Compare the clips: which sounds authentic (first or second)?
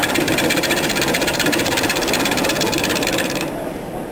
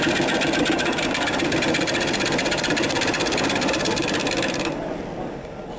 second